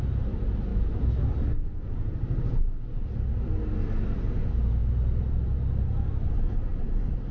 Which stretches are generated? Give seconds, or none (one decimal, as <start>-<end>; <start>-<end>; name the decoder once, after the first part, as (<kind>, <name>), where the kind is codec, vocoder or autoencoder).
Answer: 0.7-1.3 (autoencoder, DAC-VAE)